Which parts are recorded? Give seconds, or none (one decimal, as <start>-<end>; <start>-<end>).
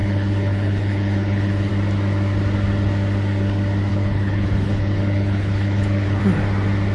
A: 1.7-3.9; 6.2-6.9